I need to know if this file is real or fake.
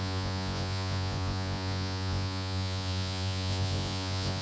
fake